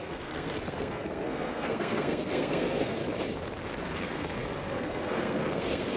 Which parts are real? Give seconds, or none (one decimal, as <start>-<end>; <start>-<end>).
3.0-3.8